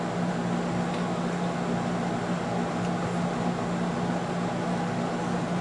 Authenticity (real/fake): real